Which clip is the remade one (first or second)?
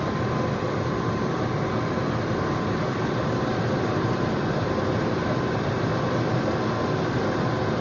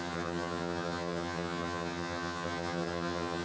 second